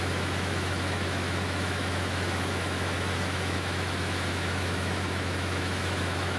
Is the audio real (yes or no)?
no